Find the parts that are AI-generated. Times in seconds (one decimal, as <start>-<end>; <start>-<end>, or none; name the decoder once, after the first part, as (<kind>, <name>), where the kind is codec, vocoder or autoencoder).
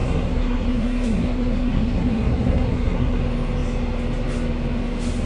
0.0-3.2 (codec, SNAC)